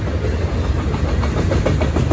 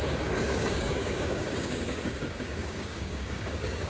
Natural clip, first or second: first